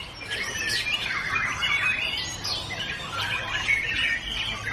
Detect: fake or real real